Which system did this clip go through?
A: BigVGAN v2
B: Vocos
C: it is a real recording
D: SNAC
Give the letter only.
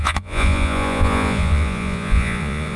B